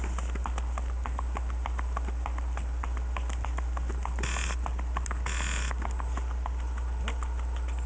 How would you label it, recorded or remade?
recorded